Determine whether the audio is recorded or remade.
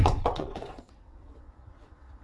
remade